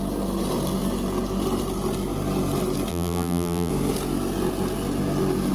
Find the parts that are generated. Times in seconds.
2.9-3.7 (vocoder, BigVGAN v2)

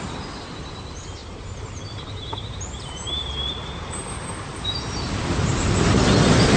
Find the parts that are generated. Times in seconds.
1.2-5.1 (vocoder, BigVGAN v2)